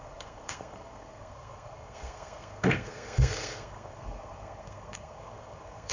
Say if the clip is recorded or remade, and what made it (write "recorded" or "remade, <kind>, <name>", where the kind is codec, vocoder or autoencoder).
remade, codec, SNAC